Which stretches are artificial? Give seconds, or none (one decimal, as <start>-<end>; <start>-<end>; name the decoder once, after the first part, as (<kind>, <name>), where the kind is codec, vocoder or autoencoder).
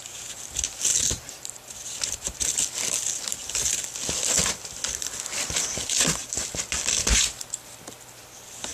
none